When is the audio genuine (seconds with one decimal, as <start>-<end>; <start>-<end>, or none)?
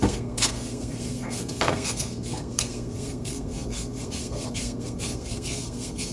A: none